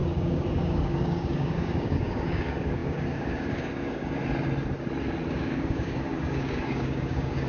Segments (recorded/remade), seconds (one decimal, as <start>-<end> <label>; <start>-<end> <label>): 0.0-4.2 remade; 4.2-5.3 recorded; 5.3-7.5 remade